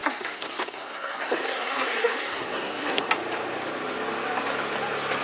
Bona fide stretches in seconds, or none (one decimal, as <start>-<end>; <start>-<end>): 3.1-5.2